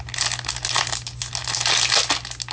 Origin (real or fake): real